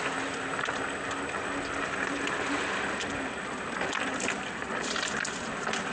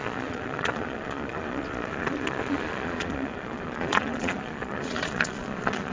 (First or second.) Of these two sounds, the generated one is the second